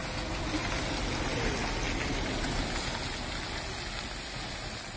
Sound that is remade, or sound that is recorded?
recorded